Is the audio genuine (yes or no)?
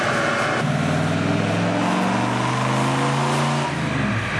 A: yes